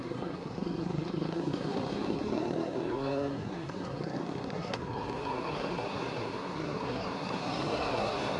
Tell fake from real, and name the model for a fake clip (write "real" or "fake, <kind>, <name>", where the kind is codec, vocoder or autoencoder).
fake, codec, SNAC